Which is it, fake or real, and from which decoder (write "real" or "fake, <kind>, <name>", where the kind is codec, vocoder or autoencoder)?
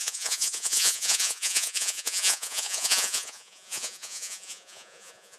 fake, vocoder, Vocos